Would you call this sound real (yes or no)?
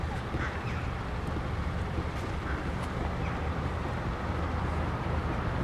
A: no